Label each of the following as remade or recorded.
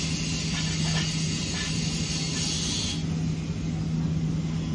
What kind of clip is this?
recorded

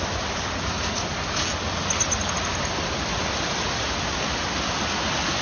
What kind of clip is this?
recorded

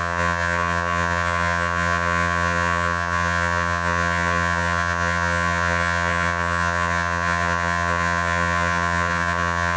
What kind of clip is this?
remade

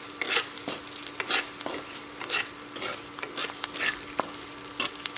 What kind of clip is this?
recorded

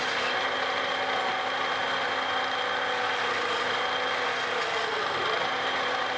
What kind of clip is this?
recorded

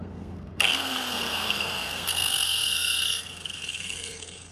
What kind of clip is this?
remade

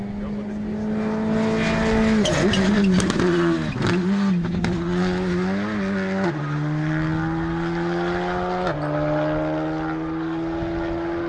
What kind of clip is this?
recorded